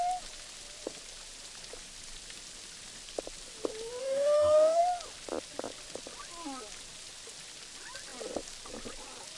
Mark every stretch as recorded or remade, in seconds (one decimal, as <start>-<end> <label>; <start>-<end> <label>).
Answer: 0.0-4.0 recorded; 4.0-4.8 remade; 4.8-9.4 recorded